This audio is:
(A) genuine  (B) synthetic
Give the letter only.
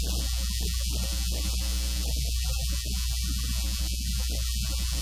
A